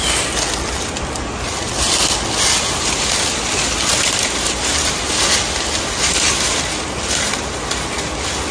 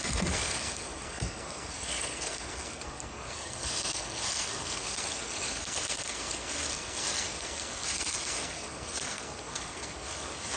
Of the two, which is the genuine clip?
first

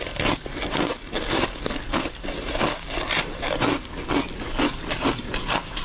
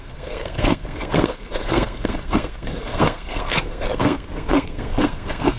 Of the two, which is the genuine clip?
first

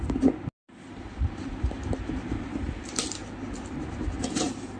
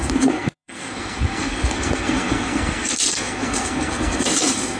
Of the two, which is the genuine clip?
first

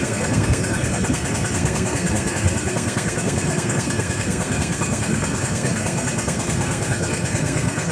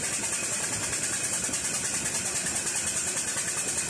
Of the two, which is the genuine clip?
second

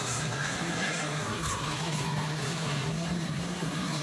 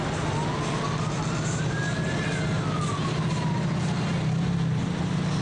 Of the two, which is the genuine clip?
second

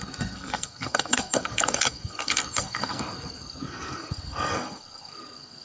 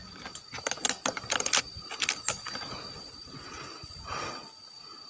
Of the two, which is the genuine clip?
second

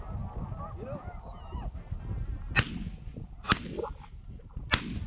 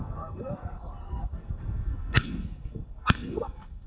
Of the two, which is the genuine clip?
first